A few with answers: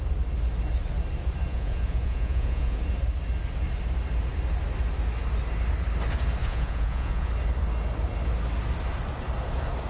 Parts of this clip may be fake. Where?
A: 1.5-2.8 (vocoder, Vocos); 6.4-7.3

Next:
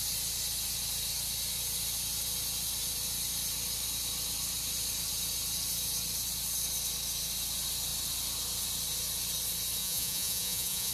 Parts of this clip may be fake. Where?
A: 9.8-10.9 (vocoder, Vocos)